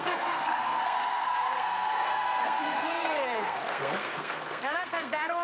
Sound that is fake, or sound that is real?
fake